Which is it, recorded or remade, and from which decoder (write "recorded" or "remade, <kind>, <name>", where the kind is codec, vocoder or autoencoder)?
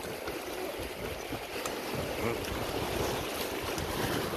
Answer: recorded